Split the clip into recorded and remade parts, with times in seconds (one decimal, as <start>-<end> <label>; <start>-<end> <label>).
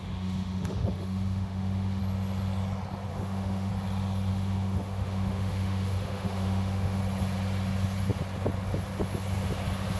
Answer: 0.0-2.0 remade; 2.0-3.1 recorded; 3.1-3.7 remade; 3.7-4.3 recorded; 4.3-7.0 remade; 7.0-10.0 recorded